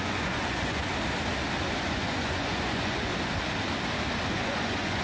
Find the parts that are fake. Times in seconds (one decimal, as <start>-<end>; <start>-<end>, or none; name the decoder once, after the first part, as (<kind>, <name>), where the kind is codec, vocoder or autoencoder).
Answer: 0.0-0.9 (vocoder, Vocos); 1.8-3.1; 4.3-5.0